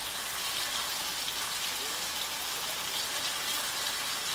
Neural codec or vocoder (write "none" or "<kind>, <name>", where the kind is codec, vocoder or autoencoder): none